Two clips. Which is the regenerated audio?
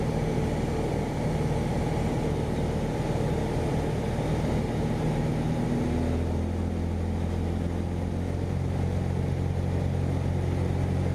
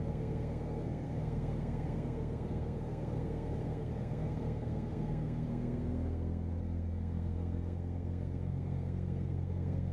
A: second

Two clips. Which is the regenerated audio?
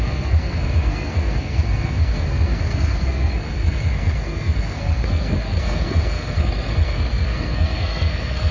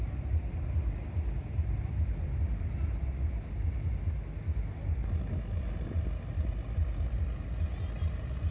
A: first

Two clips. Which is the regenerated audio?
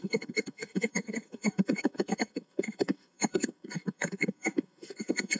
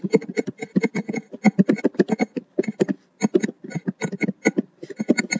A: first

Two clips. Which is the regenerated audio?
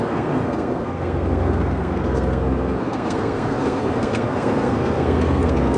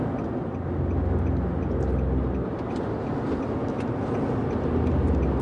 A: first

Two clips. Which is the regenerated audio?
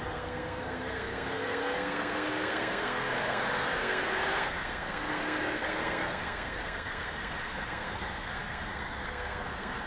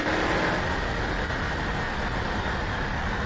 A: first